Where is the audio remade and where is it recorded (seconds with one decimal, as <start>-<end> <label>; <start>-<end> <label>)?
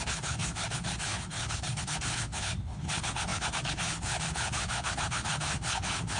0.0-6.2 remade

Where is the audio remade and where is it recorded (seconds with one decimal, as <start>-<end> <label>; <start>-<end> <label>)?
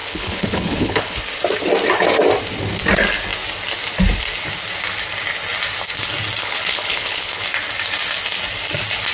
0.0-1.2 remade; 1.2-6.4 recorded; 6.4-7.4 remade; 7.4-9.1 recorded